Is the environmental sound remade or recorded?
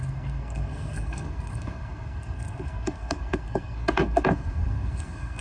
remade